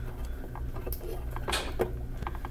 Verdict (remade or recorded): recorded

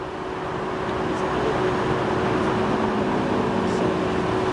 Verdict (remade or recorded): recorded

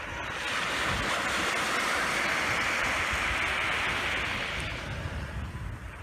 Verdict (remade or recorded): recorded